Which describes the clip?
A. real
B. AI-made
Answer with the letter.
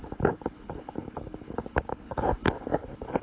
B